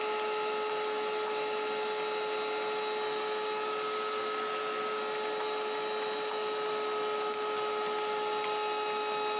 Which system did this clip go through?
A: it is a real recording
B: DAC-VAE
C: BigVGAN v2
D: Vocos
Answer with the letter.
A